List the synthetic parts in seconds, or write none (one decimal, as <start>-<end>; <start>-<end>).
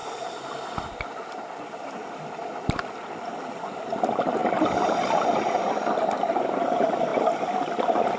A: none